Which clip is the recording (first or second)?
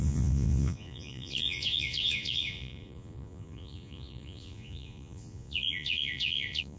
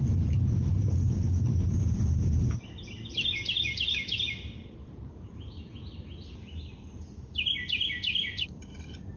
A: second